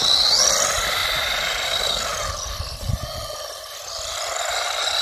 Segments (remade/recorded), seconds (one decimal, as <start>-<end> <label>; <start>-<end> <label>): 0.0-5.0 recorded